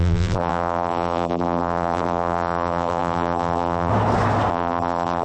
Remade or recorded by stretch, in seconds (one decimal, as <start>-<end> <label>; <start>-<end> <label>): 0.0-3.9 remade; 3.9-4.5 recorded; 4.5-5.2 remade